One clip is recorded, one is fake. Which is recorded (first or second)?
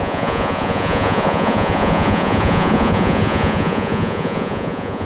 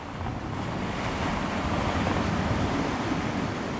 second